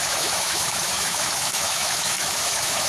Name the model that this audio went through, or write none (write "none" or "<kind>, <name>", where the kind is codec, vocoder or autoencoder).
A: autoencoder, DAC-VAE